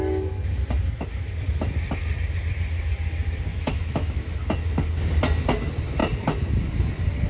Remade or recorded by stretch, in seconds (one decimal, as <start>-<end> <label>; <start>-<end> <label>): 0.0-3.5 recorded; 3.5-4.4 remade; 4.4-7.3 recorded